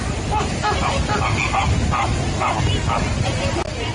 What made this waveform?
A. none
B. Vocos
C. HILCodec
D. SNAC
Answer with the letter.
A